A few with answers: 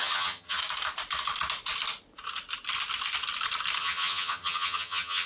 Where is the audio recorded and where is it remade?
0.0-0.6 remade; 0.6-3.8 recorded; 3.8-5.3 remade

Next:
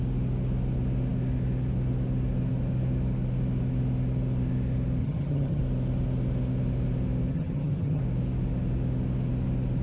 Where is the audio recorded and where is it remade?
0.0-5.0 recorded; 5.0-5.6 remade; 5.6-7.3 recorded; 7.3-8.0 remade; 8.0-9.8 recorded

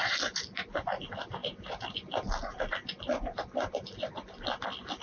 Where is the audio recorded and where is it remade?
0.0-5.0 recorded

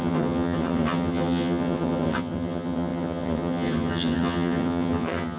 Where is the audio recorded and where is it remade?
0.0-5.4 remade

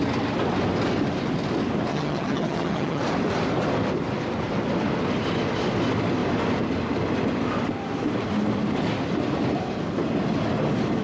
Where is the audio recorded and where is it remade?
0.0-1.9 recorded; 1.9-3.0 remade; 3.0-11.0 recorded

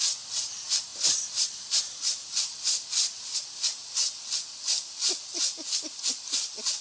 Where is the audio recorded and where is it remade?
0.0-6.8 recorded